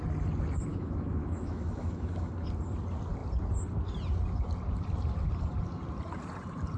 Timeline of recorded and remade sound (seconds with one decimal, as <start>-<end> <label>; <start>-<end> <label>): 0.0-0.7 recorded; 0.7-2.3 remade; 2.3-6.8 recorded